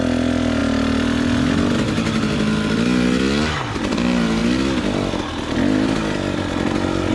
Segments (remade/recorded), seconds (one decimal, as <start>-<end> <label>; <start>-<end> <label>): 0.0-7.1 recorded